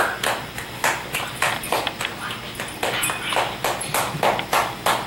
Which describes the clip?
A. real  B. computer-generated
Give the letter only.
A